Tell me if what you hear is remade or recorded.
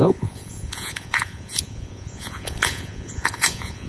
remade